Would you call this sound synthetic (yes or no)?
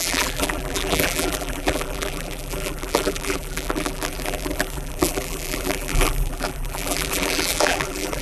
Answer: yes